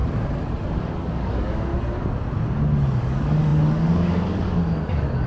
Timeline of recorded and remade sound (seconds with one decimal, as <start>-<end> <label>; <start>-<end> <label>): 0.0-0.8 recorded; 0.8-1.7 remade; 1.7-3.0 recorded; 3.0-5.3 remade